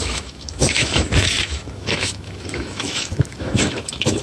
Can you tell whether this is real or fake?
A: fake